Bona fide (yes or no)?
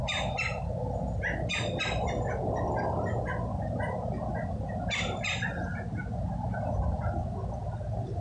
yes